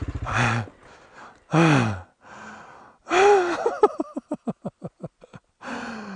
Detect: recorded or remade recorded